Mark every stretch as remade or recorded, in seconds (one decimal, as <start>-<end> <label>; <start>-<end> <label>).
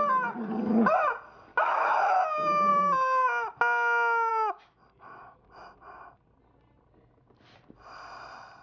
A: 0.0-1.5 recorded; 1.5-2.2 remade; 2.2-4.3 recorded; 4.3-5.4 remade; 5.4-8.6 recorded